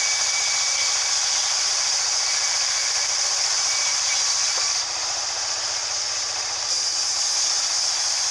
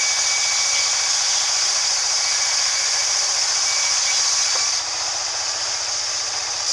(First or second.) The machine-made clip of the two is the first